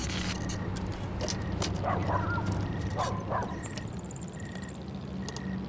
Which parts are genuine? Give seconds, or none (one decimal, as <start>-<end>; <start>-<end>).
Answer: 0.0-2.0; 5.2-5.7